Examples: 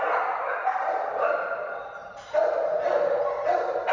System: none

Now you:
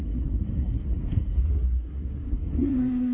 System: codec, SNAC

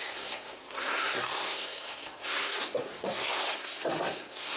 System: codec, SNAC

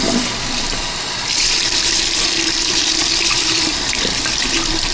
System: vocoder, BigVGAN v2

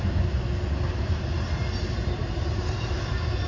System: none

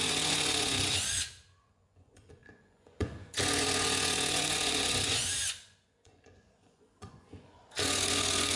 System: vocoder, Vocos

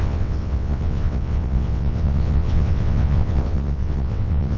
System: vocoder, WaveNeXt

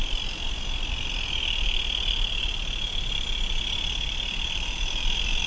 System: vocoder, BigVGAN v2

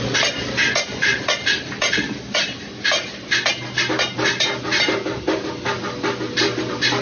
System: none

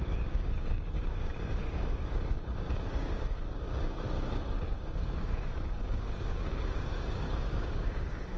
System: codec, DAC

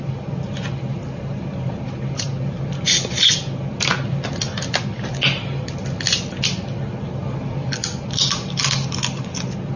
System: none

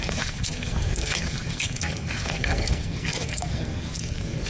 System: codec, SNAC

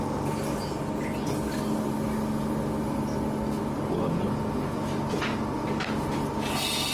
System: none